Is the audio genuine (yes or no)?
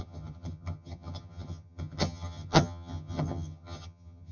no